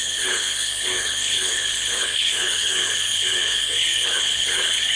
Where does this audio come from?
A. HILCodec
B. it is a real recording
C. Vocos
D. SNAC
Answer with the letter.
A